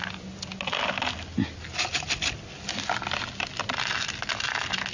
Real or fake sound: real